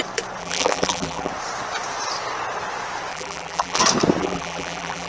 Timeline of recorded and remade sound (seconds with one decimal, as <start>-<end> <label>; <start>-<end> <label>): 0.0-0.4 recorded; 0.4-1.3 remade; 1.3-3.1 recorded; 3.1-3.8 remade; 3.8-4.2 recorded; 4.2-5.1 remade